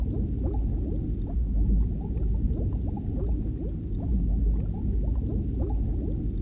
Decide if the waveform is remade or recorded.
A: recorded